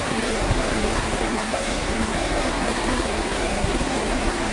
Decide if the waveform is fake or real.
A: fake